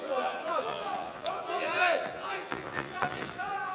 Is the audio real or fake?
fake